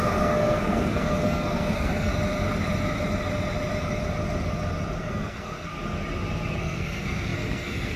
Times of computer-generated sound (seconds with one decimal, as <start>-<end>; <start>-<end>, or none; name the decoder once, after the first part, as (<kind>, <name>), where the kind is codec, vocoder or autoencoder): 0.0-2.1 (codec, SNAC); 5.0-5.7; 6.6-8.0